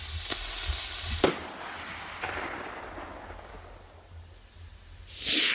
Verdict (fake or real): real